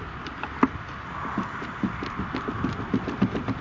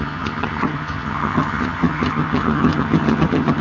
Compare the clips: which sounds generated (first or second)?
second